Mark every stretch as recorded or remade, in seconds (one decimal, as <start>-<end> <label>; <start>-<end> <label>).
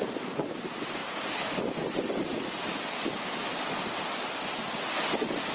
0.0-5.5 recorded